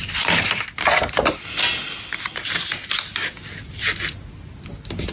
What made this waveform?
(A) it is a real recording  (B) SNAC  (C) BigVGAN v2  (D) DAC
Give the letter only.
A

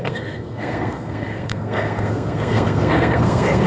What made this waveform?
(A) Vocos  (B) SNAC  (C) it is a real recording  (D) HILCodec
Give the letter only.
B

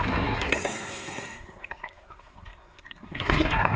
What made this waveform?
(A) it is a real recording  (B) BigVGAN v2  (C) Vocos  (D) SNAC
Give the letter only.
D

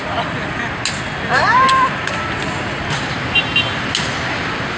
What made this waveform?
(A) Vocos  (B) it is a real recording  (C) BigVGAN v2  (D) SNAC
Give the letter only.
B